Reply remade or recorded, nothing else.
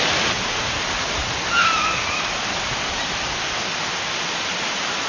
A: recorded